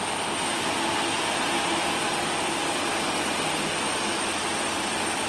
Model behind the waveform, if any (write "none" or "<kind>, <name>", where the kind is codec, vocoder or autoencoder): none